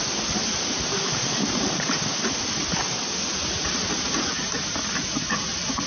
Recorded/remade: recorded